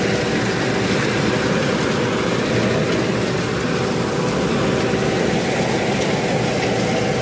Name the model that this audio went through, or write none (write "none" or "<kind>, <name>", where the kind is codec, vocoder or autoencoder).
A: none